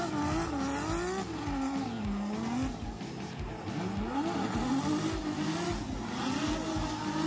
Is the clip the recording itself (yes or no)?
yes